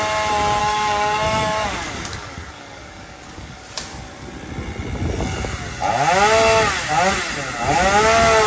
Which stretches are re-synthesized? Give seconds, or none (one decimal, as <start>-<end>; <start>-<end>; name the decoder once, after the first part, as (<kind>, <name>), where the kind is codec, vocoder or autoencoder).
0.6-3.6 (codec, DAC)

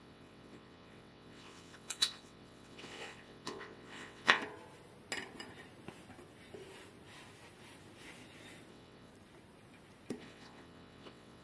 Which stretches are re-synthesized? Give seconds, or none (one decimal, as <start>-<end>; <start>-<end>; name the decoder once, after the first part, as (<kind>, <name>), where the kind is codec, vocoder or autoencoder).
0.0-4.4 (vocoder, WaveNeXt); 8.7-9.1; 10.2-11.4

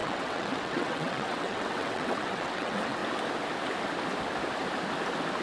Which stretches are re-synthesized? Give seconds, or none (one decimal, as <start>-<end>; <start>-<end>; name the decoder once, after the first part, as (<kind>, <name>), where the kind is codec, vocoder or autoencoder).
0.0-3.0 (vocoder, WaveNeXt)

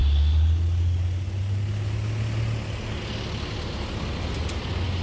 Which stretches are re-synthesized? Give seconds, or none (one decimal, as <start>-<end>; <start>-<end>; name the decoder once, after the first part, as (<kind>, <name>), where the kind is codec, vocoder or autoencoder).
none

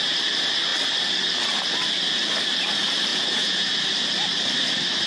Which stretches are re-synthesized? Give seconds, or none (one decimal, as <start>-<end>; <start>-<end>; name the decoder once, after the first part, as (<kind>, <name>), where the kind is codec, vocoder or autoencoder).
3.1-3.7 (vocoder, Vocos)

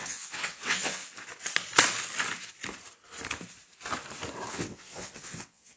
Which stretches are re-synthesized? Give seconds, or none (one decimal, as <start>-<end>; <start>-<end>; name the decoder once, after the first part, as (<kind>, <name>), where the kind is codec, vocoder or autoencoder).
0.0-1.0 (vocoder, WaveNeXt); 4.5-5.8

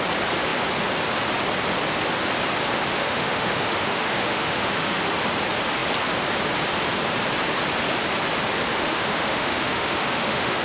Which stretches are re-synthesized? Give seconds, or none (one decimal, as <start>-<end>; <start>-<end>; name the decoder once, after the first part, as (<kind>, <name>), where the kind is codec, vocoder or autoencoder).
2.9-5.0 (autoencoder, DAC-VAE); 8.7-10.6